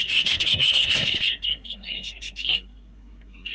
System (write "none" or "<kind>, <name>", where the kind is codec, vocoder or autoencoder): codec, SNAC